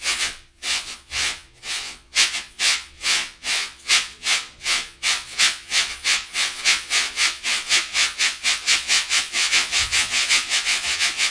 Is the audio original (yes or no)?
no